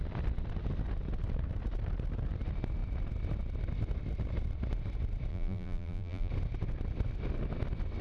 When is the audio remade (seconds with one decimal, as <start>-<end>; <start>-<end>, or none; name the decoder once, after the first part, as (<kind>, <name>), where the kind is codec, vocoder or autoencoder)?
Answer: 5.3-6.3 (vocoder, BigVGAN v2)